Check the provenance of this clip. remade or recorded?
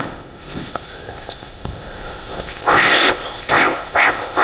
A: remade